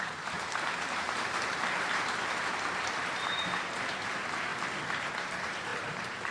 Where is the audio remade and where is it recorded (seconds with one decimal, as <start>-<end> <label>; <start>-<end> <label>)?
0.0-4.5 remade; 4.5-5.2 recorded; 5.2-6.3 remade